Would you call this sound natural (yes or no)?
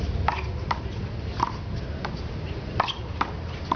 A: yes